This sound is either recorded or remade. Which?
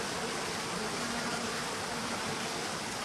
recorded